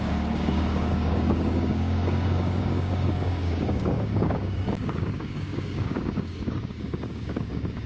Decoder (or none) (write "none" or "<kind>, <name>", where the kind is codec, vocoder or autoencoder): codec, DAC